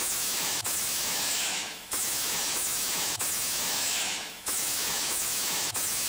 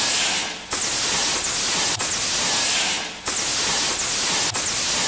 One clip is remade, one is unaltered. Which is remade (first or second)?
first